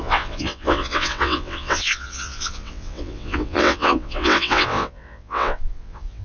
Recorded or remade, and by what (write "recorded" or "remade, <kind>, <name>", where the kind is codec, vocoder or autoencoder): remade, vocoder, WaveNeXt